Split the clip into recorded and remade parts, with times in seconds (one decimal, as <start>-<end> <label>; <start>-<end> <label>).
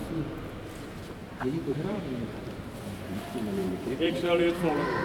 0.0-1.2 recorded; 1.2-2.7 remade; 2.7-3.6 recorded; 3.6-5.0 remade